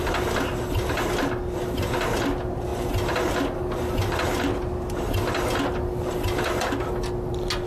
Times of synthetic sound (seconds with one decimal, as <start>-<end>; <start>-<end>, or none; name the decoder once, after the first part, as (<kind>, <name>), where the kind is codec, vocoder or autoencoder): none